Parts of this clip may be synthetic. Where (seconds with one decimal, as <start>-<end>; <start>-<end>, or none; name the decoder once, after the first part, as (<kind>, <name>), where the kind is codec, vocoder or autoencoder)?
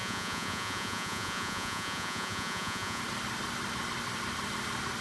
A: 0.0-3.0 (vocoder, Vocos)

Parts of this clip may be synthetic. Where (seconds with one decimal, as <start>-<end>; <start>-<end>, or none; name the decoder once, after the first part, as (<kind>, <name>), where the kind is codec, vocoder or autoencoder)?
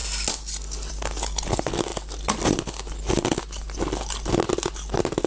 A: none